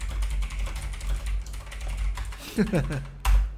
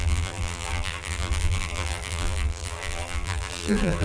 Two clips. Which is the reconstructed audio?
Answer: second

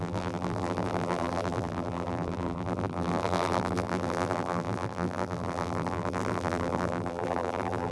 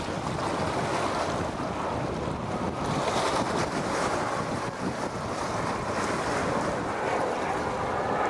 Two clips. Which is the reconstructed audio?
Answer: first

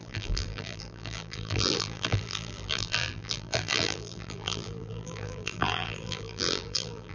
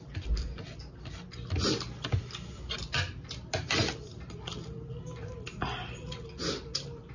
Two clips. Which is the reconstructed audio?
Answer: first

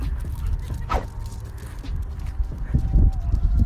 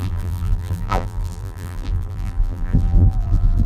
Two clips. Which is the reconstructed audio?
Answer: second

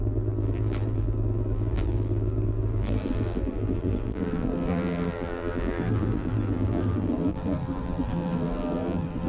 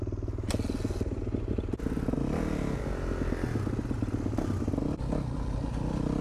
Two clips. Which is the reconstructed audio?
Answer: first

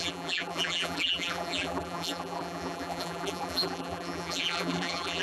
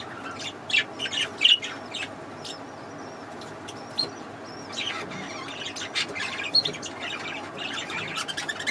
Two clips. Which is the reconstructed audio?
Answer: first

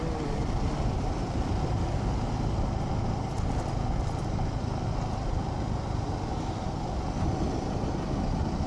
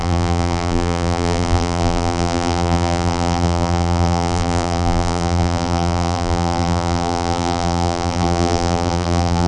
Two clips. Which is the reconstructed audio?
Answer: second